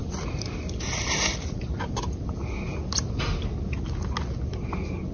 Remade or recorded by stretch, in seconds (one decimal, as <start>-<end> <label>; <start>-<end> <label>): 0.0-0.9 remade; 0.9-2.7 recorded; 2.7-3.7 remade; 3.7-5.1 recorded